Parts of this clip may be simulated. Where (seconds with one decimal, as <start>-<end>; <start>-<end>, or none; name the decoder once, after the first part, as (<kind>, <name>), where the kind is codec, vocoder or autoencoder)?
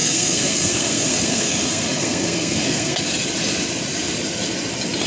0.0-3.1 (codec, SNAC)